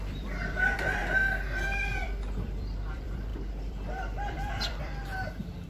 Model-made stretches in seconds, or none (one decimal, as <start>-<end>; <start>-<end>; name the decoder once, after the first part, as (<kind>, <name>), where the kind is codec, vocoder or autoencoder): 0.0-1.0 (vocoder, BigVGAN v2); 2.0-5.7